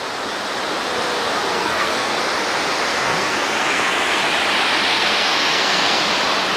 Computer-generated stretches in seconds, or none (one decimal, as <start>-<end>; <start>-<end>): 1.5-2.2; 2.9-4.2; 4.9-6.0